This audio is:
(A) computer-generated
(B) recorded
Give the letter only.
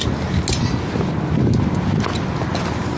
B